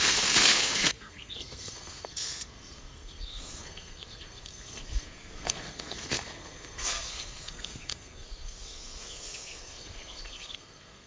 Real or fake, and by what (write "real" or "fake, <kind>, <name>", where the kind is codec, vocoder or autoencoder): fake, codec, SNAC